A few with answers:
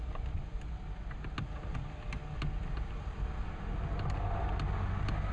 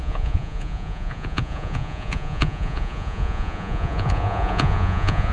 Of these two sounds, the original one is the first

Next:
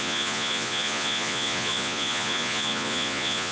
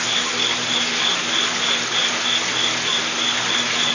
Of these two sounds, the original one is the second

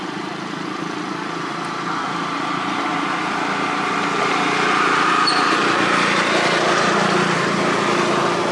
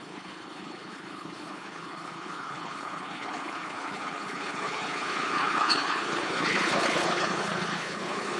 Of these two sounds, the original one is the first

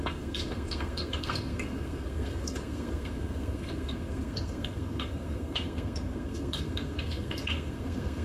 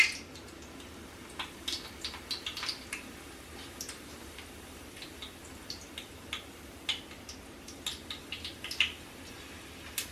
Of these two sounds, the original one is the second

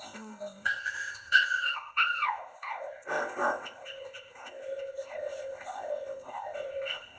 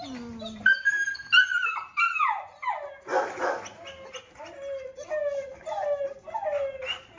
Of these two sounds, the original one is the second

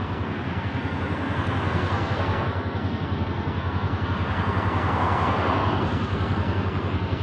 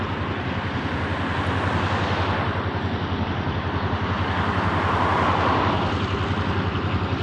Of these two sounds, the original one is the second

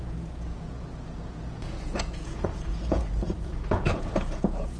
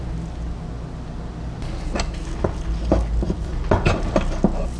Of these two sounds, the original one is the second